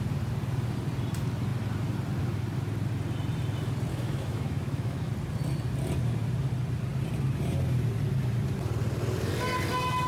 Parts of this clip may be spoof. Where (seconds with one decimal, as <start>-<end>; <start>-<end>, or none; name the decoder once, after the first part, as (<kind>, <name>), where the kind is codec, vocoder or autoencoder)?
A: 3.9-5.1 (autoencoder, DAC-VAE)

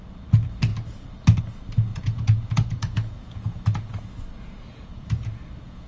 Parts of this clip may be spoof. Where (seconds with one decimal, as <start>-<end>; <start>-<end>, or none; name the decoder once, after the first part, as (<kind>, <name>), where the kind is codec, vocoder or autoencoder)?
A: 1.9-4.1 (vocoder, Vocos); 4.7-5.9

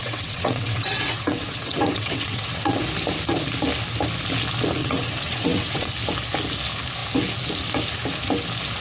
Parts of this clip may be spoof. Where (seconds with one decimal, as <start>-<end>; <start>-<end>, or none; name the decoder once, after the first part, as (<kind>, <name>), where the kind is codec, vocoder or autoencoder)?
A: 0.0-2.8 (vocoder, WaveNeXt); 4.8-5.9

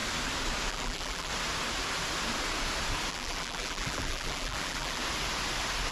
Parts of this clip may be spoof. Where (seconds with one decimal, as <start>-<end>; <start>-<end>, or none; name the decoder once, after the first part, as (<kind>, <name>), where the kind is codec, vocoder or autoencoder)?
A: 0.7-1.3 (vocoder, BigVGAN v2); 3.1-5.0

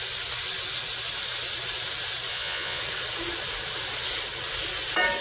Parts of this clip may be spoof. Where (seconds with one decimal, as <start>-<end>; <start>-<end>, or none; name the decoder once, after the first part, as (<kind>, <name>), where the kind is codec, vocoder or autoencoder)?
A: 2.3-2.8 (vocoder, Vocos)